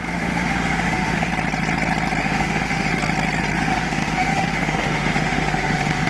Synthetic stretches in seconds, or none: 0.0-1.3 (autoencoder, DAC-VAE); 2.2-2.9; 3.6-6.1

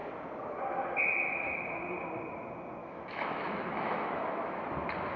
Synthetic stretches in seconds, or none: 2.8-4.6 (autoencoder, DAC-VAE)

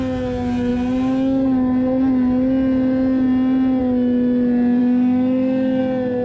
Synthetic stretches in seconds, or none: 4.8-5.8 (autoencoder, DAC-VAE)

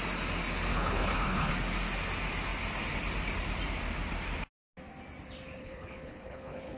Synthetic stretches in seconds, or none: 0.7-1.5 (codec, HILCodec); 5.6-6.8